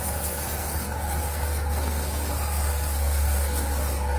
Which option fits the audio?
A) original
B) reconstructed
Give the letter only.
B